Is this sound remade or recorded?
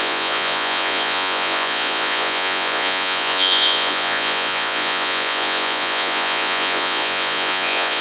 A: remade